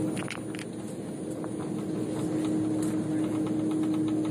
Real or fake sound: real